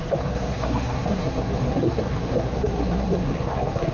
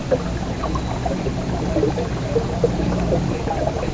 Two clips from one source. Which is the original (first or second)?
second